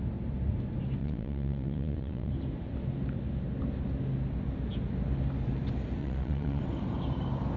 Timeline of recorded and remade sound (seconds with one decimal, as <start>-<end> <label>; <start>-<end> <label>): 0.0-1.0 recorded; 1.0-2.3 remade; 2.3-6.0 recorded; 6.0-6.6 remade; 6.6-7.6 recorded